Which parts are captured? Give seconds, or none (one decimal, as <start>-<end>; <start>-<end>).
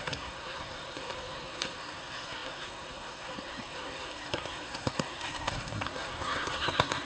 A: none